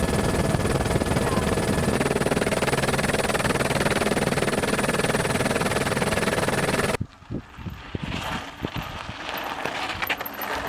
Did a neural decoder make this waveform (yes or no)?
no